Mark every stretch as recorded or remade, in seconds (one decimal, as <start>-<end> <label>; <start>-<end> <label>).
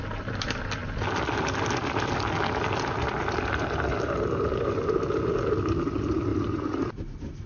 0.0-6.3 recorded; 6.3-7.0 remade; 7.0-7.5 recorded